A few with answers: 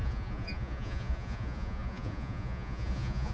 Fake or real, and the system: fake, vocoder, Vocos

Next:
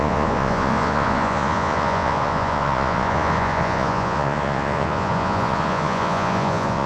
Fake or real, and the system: fake, vocoder, Vocos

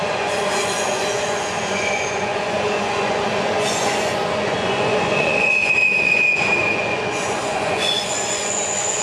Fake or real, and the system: fake, vocoder, Vocos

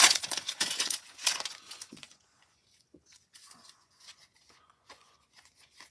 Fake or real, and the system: fake, vocoder, Vocos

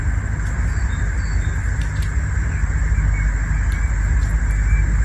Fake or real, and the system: real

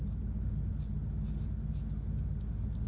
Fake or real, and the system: real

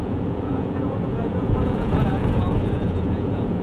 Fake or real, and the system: fake, vocoder, Vocos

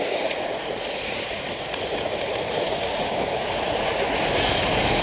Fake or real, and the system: fake, vocoder, Vocos